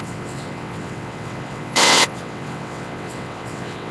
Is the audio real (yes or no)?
no